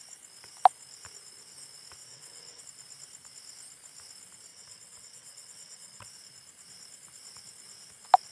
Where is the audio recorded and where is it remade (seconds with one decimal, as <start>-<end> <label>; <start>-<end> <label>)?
0.0-2.0 recorded; 2.0-2.6 remade; 2.6-4.5 recorded; 4.5-6.1 remade; 6.1-8.3 recorded